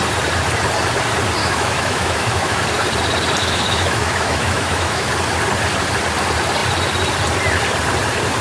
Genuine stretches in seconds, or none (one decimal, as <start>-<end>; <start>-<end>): 0.0-1.4; 2.6-3.4; 5.1-8.4